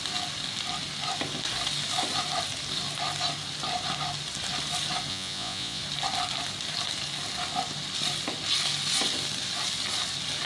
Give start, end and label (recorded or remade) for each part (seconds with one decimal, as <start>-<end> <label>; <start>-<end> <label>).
0.0-5.1 recorded; 5.1-5.8 remade; 5.8-10.5 recorded

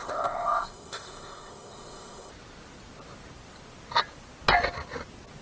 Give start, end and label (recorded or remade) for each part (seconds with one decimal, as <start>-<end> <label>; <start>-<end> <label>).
0.0-2.3 remade; 2.3-5.4 recorded

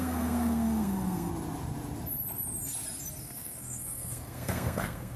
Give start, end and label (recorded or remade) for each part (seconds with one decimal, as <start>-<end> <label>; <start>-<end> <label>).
0.0-1.3 remade; 1.3-3.2 recorded; 3.2-5.2 remade

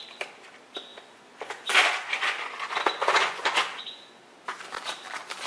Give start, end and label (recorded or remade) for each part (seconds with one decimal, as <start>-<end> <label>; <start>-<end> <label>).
0.0-0.9 recorded; 0.9-4.2 remade; 4.2-5.5 recorded

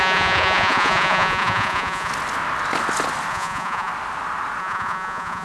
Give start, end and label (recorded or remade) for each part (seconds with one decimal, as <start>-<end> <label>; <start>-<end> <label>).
0.0-2.1 remade; 2.1-3.3 recorded; 3.3-3.9 remade; 3.9-4.6 recorded; 4.6-5.4 remade

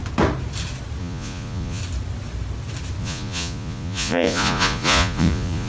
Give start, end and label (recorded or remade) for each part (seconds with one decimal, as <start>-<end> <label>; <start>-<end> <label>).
0.0-1.0 recorded; 1.0-1.8 remade; 1.8-3.0 recorded; 3.0-5.7 remade

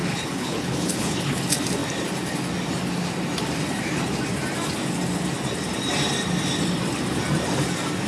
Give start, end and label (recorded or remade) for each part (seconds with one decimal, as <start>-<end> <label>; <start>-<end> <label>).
0.0-1.4 remade; 1.4-8.1 recorded

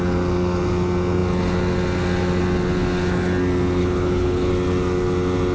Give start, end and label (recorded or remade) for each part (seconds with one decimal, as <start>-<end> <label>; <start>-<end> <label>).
0.0-3.8 recorded; 3.8-4.5 remade; 4.5-5.5 recorded